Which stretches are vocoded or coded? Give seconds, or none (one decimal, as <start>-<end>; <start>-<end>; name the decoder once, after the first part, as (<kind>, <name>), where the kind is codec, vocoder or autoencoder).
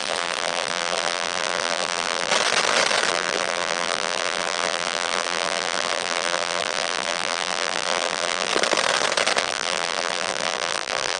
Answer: 0.0-2.3 (vocoder, BigVGAN v2); 3.1-8.5; 9.4-11.2